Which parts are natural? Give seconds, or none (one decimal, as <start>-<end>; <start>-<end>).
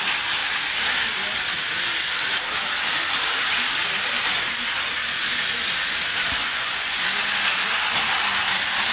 0.0-6.4; 7.0-8.9